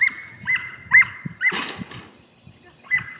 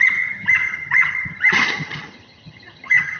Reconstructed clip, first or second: second